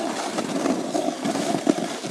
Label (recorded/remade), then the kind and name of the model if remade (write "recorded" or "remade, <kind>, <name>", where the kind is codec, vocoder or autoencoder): recorded